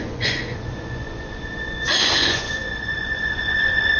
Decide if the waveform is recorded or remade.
remade